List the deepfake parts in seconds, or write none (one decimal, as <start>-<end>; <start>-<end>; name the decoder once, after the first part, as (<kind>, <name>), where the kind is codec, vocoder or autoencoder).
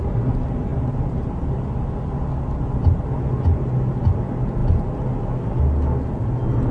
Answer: none